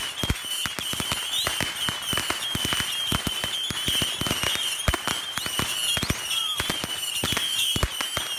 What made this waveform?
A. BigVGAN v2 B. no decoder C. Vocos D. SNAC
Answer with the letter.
B